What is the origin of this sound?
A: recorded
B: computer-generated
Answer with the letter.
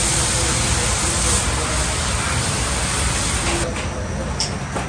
A